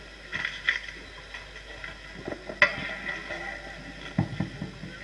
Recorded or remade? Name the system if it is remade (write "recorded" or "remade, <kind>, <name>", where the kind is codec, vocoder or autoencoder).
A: recorded